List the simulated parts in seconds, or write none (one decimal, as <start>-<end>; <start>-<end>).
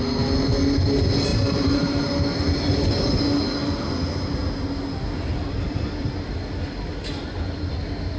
1.3-2.0